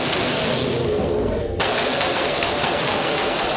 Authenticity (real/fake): fake